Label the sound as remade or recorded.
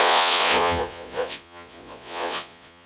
remade